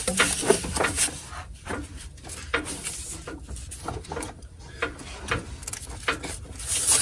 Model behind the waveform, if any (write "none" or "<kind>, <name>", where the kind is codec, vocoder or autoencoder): vocoder, BigVGAN v2